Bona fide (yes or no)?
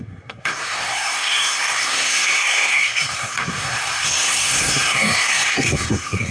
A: no